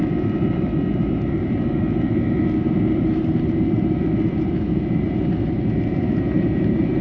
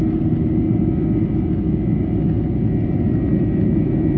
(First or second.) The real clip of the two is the second